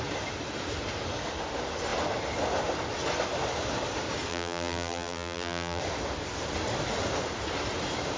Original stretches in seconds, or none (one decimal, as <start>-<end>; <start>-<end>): 0.0-4.3; 5.8-8.2